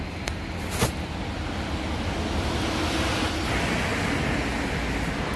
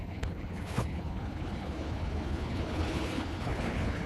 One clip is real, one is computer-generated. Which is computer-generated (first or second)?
second